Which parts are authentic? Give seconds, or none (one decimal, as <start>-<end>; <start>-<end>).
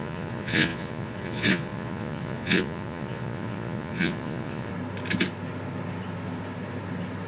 4.7-7.3